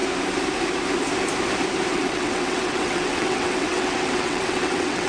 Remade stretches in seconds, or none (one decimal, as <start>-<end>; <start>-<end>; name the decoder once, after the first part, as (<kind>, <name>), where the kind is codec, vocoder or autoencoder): 1.9-5.1 (vocoder, WaveNeXt)